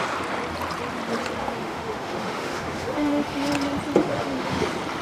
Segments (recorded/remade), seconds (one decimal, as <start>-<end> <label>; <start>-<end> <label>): 0.0-1.4 recorded; 1.4-3.5 remade; 3.5-4.0 recorded; 4.0-4.6 remade; 4.6-5.0 recorded